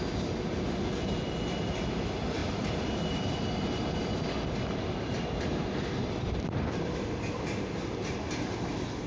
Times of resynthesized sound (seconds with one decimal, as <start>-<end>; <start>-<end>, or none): 2.4-7.3